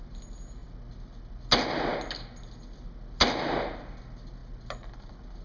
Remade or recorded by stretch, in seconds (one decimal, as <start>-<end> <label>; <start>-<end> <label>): 0.0-5.4 recorded